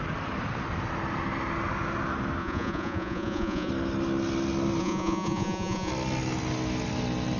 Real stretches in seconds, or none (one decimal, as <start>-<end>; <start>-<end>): 0.0-2.4; 3.7-4.8; 5.9-7.4